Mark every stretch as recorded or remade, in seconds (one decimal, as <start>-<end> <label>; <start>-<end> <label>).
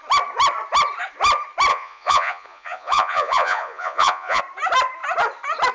0.0-1.7 recorded; 1.7-4.4 remade; 4.4-5.7 recorded